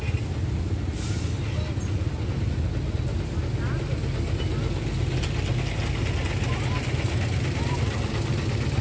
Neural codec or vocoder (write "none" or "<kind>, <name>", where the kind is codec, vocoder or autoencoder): none